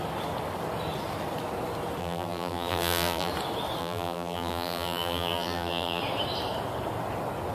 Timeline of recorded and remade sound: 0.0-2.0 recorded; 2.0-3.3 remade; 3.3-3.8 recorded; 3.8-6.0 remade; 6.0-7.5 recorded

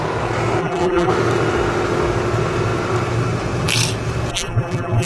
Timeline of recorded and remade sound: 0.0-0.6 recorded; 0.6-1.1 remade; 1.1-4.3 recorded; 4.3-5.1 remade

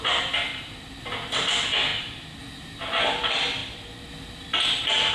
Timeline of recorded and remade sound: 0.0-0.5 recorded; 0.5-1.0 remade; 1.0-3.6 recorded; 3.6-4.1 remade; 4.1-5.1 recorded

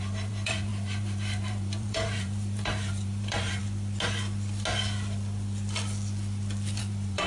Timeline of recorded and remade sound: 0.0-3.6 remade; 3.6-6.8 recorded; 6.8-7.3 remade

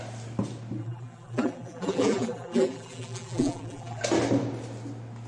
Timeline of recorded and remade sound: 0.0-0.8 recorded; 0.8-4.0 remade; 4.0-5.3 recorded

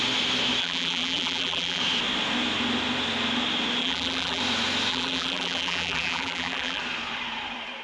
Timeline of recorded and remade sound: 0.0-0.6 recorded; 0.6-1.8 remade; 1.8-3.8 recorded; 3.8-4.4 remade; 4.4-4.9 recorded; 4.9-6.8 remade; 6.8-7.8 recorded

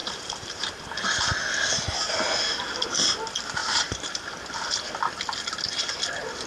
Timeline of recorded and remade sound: 0.0-0.8 remade; 0.8-3.6 recorded; 3.6-4.4 remade; 4.4-6.5 recorded

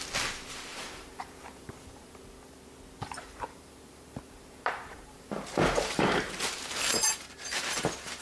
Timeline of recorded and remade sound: 0.0-0.7 recorded; 0.7-2.2 remade; 2.2-3.0 recorded; 3.0-8.2 remade